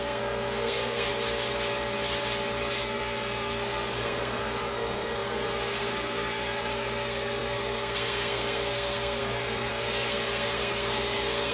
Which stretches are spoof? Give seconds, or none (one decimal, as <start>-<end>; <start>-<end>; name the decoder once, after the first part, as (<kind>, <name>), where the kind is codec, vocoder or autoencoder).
0.0-1.1 (codec, SNAC); 2.8-11.5